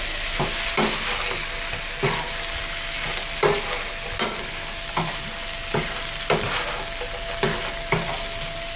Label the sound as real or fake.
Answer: real